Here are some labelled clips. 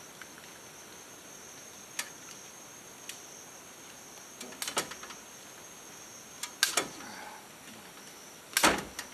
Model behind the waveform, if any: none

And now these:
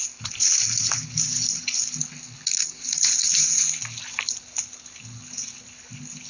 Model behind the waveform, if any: none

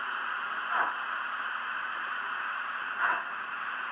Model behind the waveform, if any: vocoder, Vocos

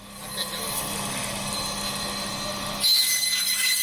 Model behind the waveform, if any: none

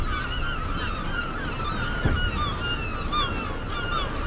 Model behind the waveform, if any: none